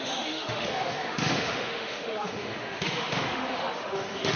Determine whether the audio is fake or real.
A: fake